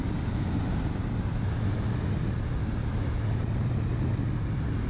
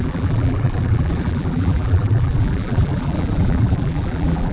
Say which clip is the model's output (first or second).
second